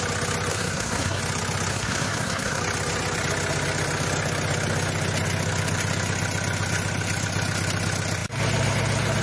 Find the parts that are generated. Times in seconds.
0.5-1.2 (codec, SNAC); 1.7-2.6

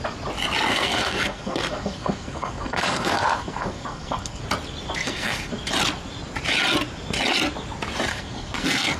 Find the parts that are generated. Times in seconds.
0.7-4.4 (codec, SNAC); 5.0-5.5; 8.1-9.0

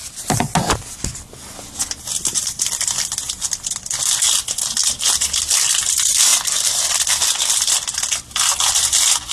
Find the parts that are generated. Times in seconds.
none

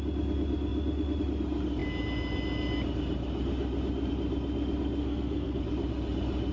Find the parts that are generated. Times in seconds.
5.0-5.6 (codec, SNAC)

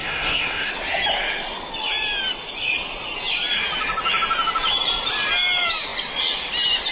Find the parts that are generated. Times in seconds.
0.0-0.7 (codec, SNAC)

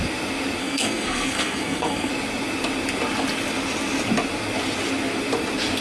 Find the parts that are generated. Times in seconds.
0.6-2.1 (codec, SNAC)

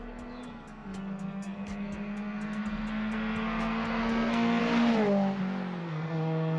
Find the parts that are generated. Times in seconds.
0.0-4.6 (codec, SNAC); 5.8-6.6